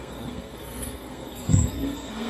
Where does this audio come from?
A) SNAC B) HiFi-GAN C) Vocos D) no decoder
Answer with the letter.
A